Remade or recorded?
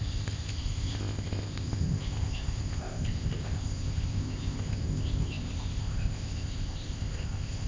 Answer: remade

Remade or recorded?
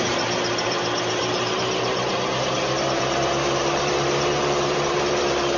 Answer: remade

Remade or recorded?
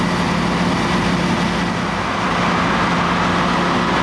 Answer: recorded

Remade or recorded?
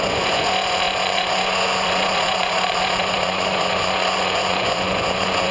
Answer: remade